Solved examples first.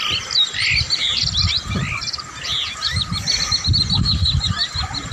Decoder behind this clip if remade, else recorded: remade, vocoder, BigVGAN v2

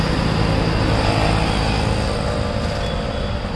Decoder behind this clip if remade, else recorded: recorded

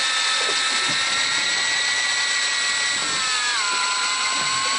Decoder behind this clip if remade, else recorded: recorded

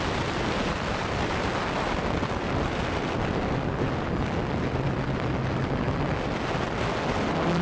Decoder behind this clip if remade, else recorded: recorded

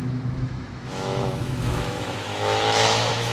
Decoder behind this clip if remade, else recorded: remade, autoencoder, DAC-VAE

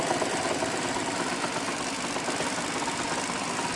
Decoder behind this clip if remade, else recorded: recorded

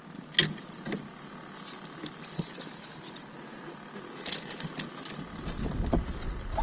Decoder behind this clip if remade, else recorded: recorded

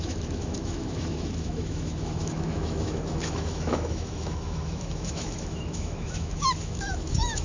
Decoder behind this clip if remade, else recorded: remade, autoencoder, DAC-VAE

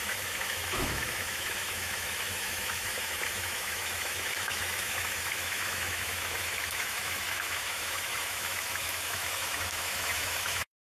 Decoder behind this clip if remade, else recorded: remade, autoencoder, DAC-VAE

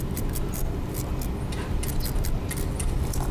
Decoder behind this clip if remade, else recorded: recorded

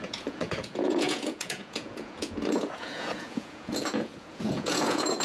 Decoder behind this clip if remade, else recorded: remade, vocoder, Vocos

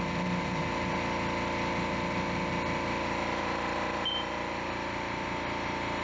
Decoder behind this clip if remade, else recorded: recorded